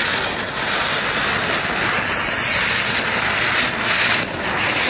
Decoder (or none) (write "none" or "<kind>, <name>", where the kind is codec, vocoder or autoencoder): none